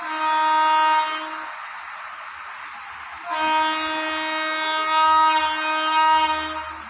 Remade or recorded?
recorded